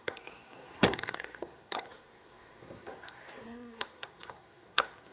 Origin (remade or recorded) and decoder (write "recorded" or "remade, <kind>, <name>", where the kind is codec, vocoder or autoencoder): remade, codec, SNAC